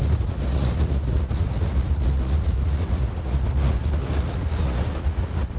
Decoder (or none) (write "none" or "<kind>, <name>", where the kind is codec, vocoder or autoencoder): vocoder, Vocos